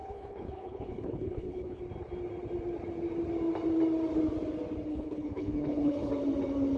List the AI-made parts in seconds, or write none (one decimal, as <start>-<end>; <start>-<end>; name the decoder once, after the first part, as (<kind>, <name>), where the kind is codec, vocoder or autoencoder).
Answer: 0.0-1.8 (codec, HILCodec); 4.9-6.1